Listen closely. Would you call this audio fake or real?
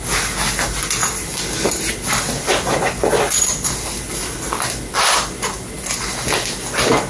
real